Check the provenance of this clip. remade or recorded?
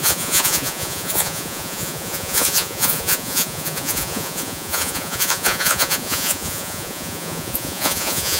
remade